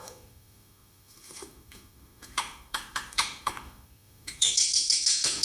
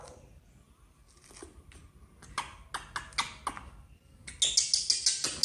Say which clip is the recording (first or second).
second